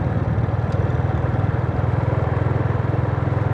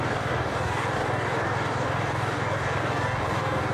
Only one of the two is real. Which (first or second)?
first